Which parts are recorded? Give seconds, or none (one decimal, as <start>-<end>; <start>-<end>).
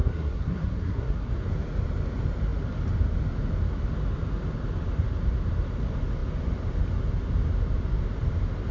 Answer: 1.3-8.7